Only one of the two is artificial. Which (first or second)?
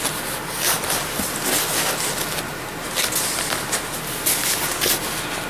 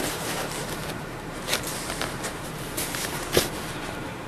second